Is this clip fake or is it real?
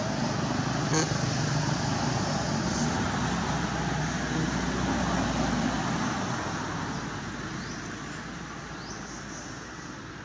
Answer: real